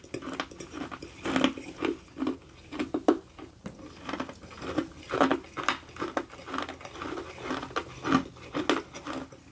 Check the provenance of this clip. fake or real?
real